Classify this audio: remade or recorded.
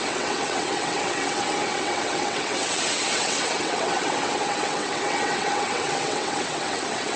remade